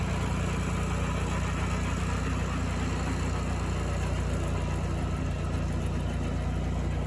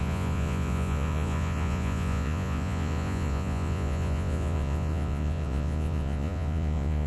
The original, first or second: first